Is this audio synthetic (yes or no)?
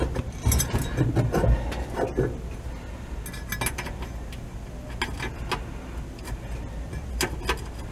no